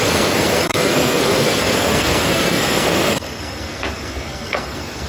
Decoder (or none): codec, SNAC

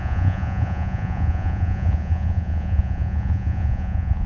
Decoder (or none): vocoder, Vocos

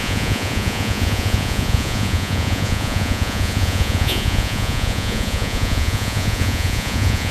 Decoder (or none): vocoder, Vocos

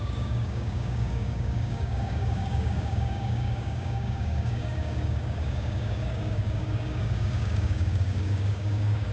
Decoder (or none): codec, DAC